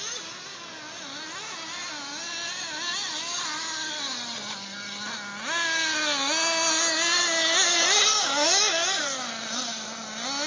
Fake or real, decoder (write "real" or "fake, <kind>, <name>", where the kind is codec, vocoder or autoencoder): real